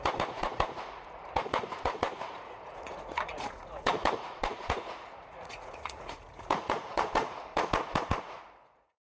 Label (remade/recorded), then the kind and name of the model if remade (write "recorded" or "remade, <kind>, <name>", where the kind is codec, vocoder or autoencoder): remade, vocoder, Vocos